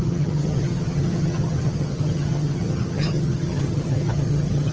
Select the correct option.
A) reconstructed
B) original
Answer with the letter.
A